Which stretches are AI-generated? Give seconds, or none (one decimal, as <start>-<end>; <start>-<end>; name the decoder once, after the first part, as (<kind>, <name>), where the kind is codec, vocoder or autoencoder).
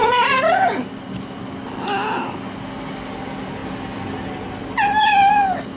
none